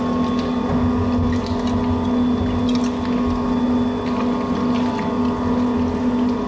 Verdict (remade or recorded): recorded